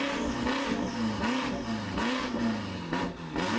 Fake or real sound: real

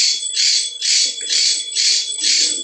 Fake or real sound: real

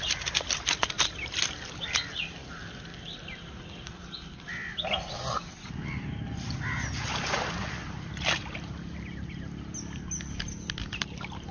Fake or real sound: real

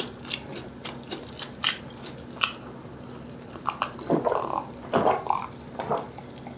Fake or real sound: real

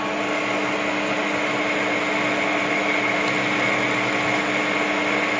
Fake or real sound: real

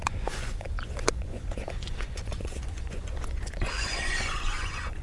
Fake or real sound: fake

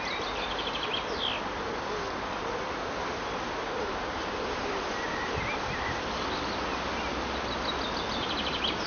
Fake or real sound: real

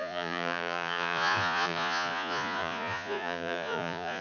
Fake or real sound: fake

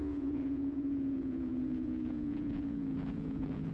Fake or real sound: fake